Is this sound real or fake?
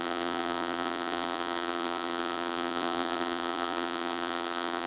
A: fake